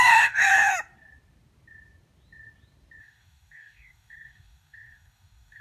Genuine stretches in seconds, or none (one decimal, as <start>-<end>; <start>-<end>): 0.7-3.0